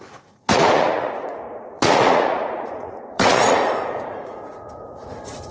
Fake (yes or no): yes